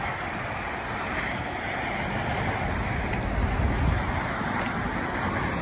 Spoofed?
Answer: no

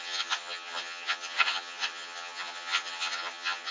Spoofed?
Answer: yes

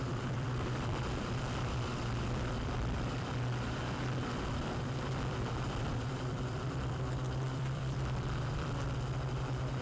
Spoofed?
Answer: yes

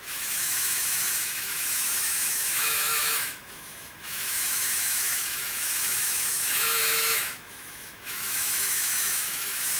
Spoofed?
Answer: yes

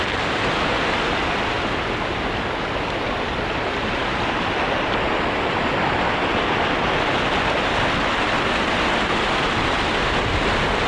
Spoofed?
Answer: no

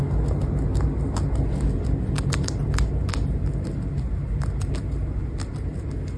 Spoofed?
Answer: no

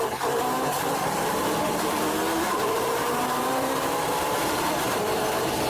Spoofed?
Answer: yes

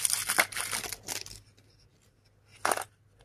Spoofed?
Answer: no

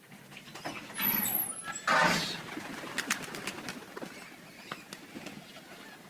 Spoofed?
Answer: no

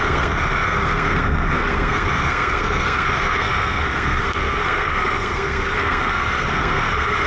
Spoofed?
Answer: yes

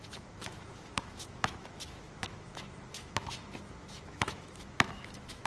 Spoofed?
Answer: yes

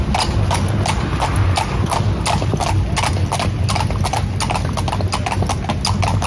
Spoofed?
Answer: no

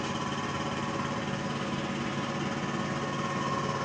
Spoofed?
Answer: no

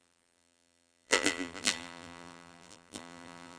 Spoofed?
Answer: yes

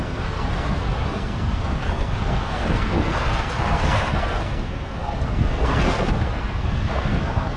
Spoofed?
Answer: yes